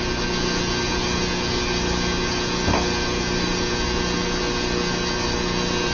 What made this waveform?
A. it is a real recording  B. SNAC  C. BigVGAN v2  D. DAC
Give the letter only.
A